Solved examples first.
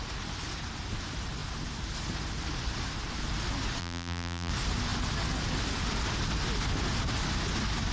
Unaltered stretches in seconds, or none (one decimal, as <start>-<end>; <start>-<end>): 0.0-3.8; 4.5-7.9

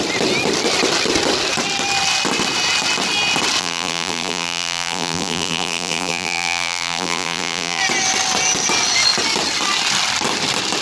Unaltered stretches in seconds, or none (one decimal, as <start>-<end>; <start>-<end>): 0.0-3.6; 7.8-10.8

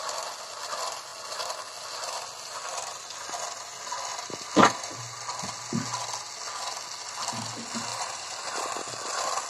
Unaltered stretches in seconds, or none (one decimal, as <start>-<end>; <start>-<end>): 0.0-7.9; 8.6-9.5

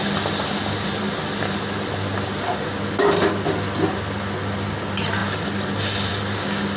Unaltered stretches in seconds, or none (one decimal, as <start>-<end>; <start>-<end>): 0.0-6.8

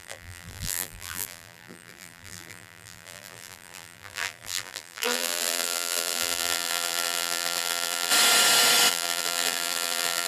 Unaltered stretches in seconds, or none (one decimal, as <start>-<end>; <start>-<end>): 8.1-8.9

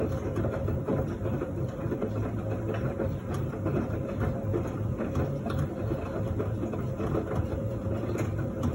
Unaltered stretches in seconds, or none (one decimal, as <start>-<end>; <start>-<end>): 0.0-8.7

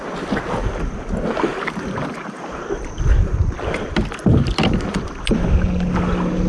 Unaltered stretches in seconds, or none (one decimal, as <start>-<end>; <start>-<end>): 0.0-1.5; 3.0-6.5

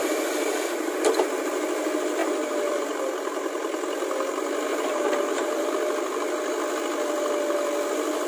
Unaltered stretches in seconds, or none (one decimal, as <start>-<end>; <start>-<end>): 0.9-2.2; 2.8-4.7; 5.7-8.3